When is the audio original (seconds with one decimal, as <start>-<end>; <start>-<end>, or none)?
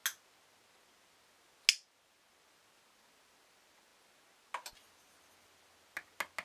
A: 0.0-6.4